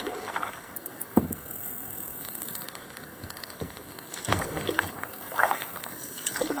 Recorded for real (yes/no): no